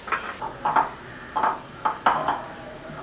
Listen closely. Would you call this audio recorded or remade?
recorded